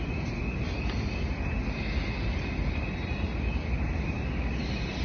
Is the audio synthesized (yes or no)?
no